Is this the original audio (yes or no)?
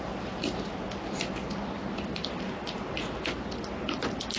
yes